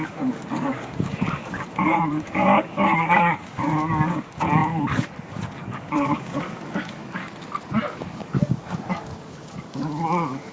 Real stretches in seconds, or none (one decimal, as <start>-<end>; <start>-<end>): 7.2-7.9